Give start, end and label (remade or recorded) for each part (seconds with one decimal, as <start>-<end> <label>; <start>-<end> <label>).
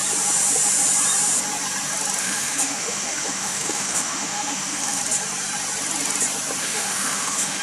0.0-2.2 recorded; 2.2-5.0 remade; 5.0-6.6 recorded; 6.6-7.6 remade